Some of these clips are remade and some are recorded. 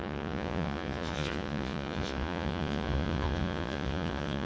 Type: remade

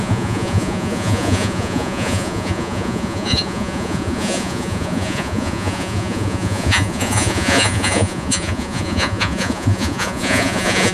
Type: remade